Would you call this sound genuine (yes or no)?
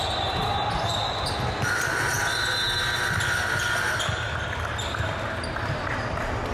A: yes